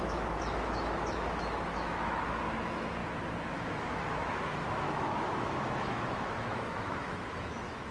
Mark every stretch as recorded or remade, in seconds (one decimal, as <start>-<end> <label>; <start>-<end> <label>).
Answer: 0.0-3.0 remade; 3.0-3.5 recorded; 3.5-7.9 remade